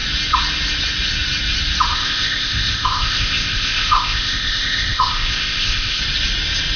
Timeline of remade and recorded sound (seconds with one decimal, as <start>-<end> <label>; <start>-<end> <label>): 0.0-1.9 recorded; 1.9-6.0 remade; 6.0-6.8 recorded